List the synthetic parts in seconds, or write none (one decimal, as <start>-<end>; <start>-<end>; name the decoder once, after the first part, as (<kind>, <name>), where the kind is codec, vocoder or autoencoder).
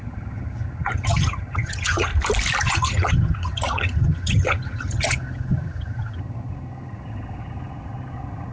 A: 0.0-2.1 (vocoder, HiFi-GAN); 2.6-8.5